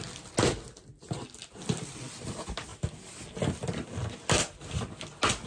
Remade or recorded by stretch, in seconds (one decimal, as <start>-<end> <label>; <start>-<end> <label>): 0.0-5.5 recorded